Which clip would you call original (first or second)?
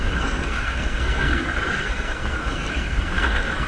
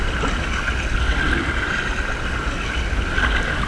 second